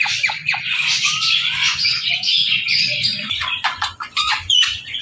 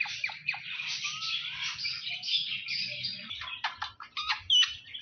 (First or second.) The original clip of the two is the second